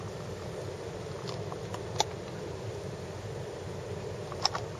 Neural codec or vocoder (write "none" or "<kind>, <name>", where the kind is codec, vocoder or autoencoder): none